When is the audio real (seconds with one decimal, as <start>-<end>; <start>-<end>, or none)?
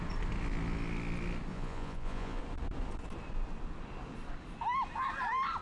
0.0-1.5; 2.4-5.6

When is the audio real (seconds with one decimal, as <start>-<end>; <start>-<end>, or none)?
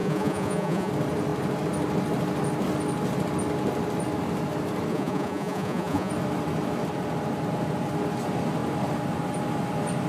0.9-4.9; 6.1-10.1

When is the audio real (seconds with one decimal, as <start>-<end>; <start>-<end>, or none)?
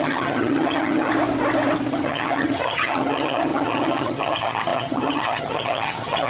1.1-1.9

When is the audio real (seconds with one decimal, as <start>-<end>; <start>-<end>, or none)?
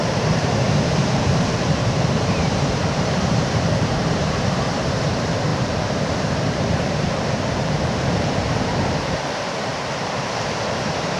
none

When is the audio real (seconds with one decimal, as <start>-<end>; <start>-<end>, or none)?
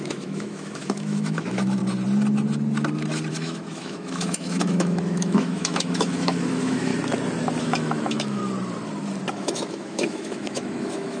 1.8-3.3; 6.9-7.6; 8.4-9.3